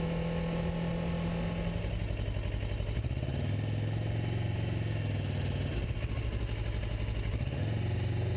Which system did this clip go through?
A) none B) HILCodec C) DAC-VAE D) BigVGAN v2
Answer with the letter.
A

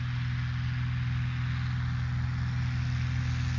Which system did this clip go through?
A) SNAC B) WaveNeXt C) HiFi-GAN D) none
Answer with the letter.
D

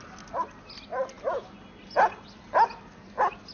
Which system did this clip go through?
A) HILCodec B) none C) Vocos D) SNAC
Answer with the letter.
B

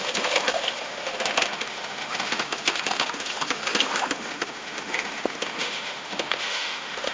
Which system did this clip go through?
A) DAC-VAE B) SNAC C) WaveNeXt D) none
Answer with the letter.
A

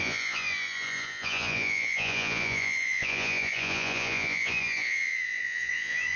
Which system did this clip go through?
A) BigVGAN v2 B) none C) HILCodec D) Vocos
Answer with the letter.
D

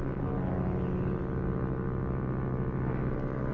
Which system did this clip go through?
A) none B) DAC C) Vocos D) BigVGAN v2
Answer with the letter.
A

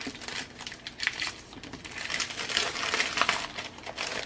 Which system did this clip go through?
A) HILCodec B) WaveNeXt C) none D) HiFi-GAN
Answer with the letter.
C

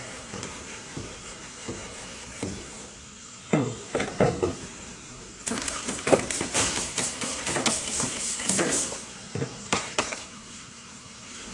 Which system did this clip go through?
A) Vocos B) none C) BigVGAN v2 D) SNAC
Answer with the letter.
D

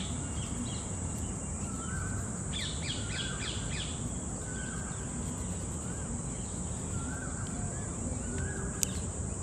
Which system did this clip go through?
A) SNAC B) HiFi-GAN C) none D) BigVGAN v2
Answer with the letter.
C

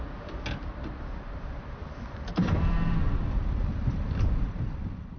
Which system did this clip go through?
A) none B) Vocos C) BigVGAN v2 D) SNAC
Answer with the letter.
A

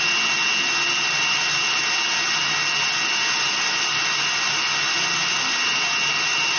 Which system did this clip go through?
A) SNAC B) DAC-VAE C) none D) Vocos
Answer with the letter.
C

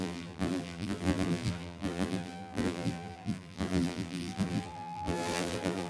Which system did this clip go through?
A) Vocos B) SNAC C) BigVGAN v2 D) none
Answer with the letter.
C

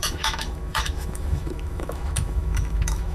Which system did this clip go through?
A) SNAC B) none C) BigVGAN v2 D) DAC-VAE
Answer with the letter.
D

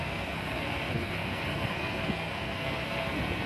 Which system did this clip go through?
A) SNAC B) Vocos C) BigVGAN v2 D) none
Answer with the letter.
A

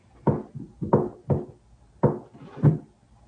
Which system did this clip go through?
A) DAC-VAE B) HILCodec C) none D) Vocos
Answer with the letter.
C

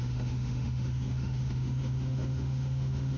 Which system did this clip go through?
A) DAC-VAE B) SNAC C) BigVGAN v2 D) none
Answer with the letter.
A